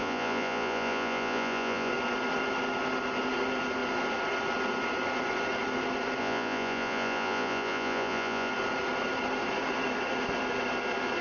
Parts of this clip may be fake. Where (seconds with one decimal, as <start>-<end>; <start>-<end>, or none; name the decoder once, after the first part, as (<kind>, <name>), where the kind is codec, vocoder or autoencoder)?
0.0-1.9 (vocoder, Vocos); 6.2-8.5